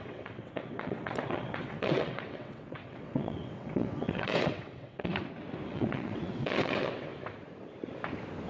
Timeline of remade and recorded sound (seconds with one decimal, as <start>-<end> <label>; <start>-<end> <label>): 0.0-5.1 remade; 5.1-5.7 recorded; 5.7-7.1 remade; 7.1-8.5 recorded